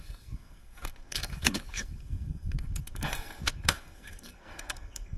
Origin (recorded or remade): remade